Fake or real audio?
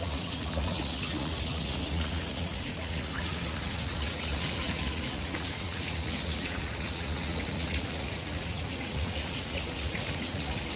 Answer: fake